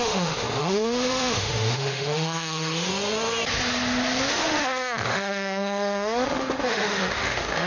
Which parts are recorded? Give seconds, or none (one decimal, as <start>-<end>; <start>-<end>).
2.9-4.3